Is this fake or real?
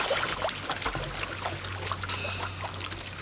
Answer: real